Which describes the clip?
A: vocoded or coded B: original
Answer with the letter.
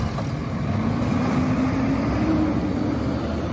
B